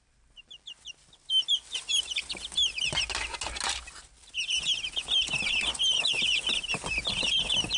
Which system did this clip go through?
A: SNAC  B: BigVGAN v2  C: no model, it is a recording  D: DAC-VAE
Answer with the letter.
C